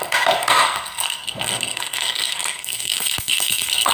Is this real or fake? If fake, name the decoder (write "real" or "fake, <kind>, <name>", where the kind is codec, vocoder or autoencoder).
fake, codec, SNAC